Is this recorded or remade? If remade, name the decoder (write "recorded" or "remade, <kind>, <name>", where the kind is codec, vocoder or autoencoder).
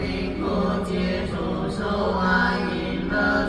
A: recorded